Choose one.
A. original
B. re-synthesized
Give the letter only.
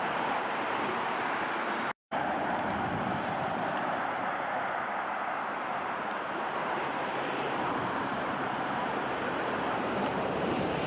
B